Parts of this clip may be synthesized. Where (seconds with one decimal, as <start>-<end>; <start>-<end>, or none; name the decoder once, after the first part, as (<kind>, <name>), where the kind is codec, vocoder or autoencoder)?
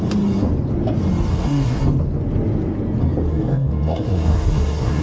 1.3-1.8 (codec, SNAC); 3.3-5.0